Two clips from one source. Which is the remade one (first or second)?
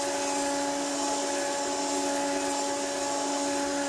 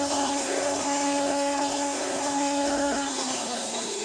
second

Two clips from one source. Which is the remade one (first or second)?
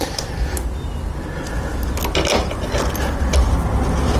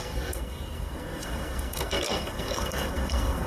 second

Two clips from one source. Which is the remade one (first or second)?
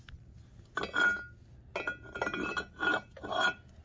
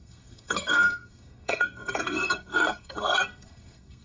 second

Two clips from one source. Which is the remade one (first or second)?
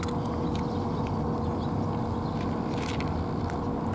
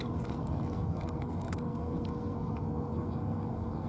second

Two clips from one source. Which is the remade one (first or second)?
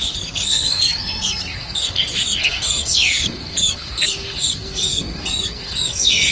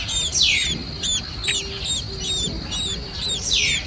first